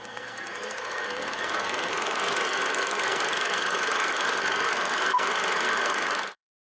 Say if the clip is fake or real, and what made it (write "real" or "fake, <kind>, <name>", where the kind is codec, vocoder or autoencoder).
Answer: fake, codec, SNAC